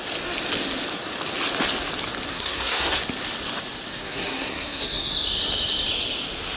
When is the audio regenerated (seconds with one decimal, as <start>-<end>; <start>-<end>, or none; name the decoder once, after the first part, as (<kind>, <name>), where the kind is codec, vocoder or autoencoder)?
2.3-3.0 (codec, SNAC); 3.9-5.1